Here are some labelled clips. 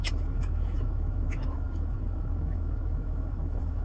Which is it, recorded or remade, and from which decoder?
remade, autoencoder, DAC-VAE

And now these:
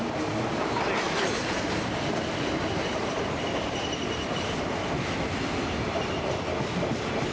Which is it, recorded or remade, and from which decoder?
recorded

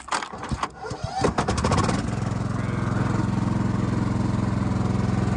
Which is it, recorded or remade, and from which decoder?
recorded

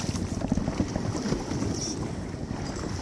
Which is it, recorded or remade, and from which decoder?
recorded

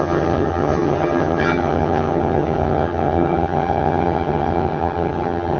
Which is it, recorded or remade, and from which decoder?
remade, vocoder, HiFi-GAN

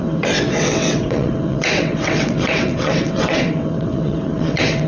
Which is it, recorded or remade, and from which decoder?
remade, vocoder, WaveNeXt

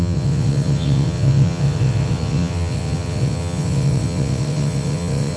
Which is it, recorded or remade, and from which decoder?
remade, vocoder, WaveNeXt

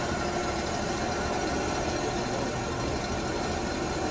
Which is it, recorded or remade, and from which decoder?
remade, vocoder, BigVGAN v2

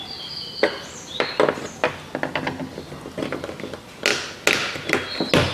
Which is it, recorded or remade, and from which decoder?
recorded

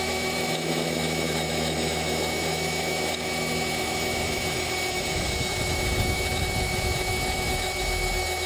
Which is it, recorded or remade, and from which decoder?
remade, autoencoder, DAC-VAE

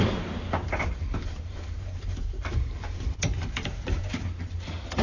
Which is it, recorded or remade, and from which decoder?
remade, vocoder, BigVGAN v2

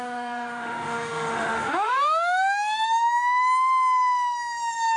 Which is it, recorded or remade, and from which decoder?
remade, autoencoder, DAC-VAE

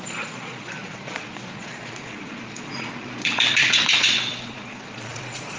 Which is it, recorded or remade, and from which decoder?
remade, vocoder, Vocos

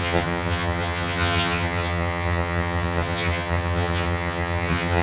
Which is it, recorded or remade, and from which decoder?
remade, vocoder, HiFi-GAN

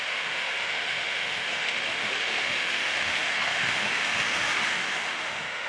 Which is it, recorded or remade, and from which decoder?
remade, autoencoder, DAC-VAE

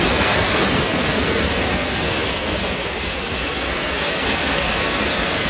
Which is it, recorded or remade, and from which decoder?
remade, codec, SNAC